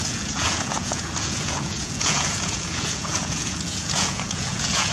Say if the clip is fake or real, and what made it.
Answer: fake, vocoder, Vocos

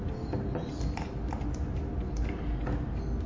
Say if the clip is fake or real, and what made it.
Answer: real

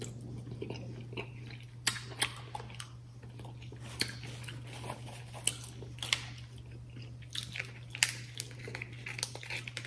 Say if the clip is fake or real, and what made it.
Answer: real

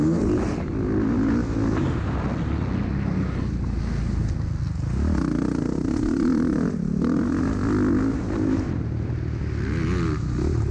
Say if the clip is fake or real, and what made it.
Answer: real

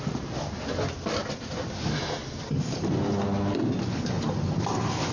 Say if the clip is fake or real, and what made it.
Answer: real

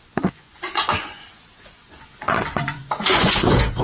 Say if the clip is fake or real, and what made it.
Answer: fake, vocoder, Vocos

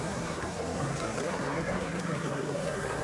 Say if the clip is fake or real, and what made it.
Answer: fake, codec, SNAC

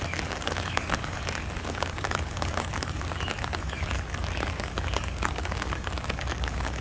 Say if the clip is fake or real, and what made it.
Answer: fake, codec, DAC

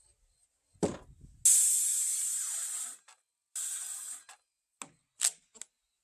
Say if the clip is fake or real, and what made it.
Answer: real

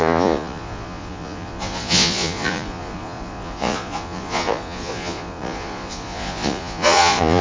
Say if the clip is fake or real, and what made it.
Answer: fake, vocoder, Vocos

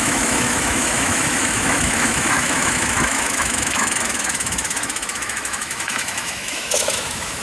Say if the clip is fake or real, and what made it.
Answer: fake, autoencoder, DAC-VAE